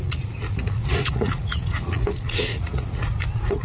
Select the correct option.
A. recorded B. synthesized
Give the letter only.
B